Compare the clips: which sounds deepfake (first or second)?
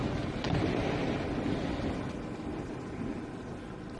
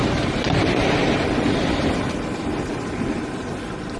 second